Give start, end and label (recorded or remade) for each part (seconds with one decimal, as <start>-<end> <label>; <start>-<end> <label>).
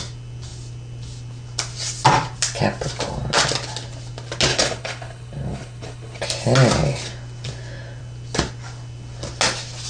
0.0-4.5 recorded; 4.5-6.2 remade; 6.2-9.9 recorded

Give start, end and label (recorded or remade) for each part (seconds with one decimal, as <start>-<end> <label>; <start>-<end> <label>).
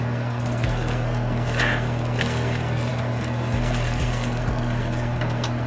0.0-5.7 remade